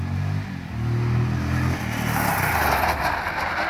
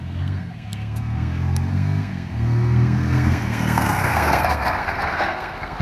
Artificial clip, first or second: second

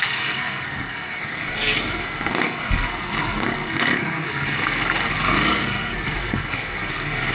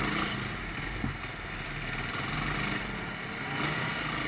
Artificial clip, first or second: first